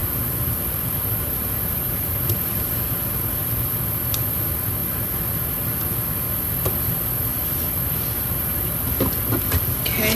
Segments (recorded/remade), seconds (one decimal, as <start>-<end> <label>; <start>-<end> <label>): 0.0-3.7 remade; 3.7-4.8 recorded; 4.8-6.4 remade; 6.4-7.3 recorded; 7.3-8.8 remade; 8.8-10.1 recorded